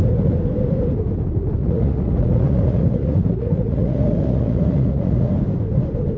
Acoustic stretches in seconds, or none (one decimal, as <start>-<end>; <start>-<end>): 0.0-1.6; 5.3-6.2